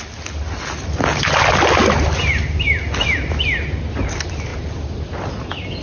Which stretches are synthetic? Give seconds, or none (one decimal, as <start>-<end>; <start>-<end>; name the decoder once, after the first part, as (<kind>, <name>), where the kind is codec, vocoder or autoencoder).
none